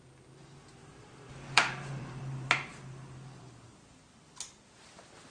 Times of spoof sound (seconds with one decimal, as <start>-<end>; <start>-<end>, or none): 0.8-4.0